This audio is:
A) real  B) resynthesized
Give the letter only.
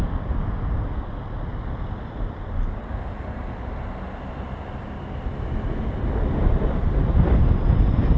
A